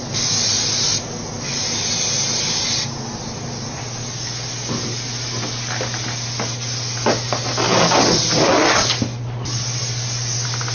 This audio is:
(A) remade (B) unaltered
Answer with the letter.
B